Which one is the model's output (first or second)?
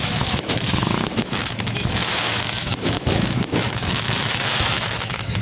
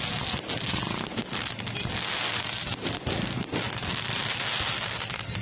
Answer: first